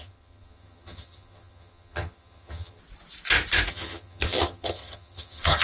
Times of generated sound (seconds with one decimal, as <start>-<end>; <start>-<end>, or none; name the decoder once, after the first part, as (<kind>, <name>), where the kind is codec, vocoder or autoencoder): 0.0-2.8 (vocoder, HiFi-GAN); 3.7-5.6